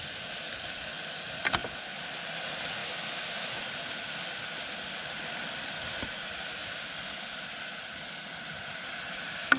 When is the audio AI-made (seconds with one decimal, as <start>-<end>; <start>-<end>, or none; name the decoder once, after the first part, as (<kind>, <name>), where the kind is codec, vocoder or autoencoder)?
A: 2.8-3.6 (autoencoder, DAC-VAE)